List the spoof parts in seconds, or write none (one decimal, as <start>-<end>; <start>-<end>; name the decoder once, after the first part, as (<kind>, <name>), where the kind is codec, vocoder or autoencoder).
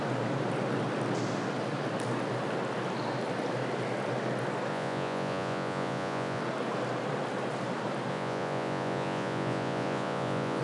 4.7-6.4 (vocoder, Vocos); 8.1-10.6